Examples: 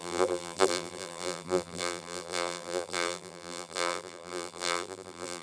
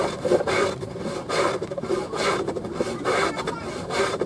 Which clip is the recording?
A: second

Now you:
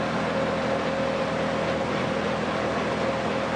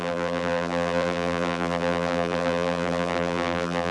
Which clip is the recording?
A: first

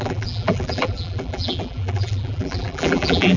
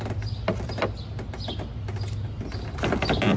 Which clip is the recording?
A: second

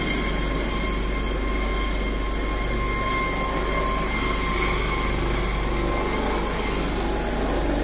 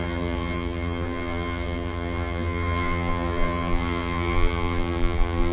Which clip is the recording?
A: first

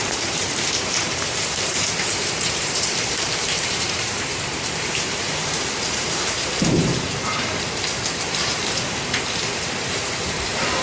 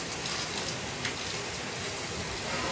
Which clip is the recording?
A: second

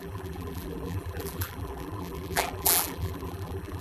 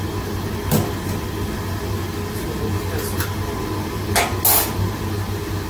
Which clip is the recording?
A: second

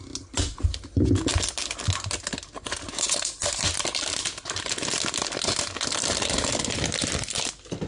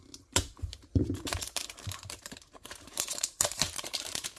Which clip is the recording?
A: first